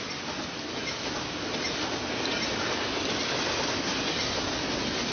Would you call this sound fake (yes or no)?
no